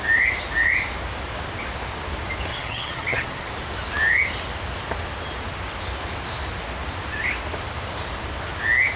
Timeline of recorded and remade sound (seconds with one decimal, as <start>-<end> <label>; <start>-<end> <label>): 0.0-2.5 recorded; 2.5-3.5 remade; 3.5-9.0 recorded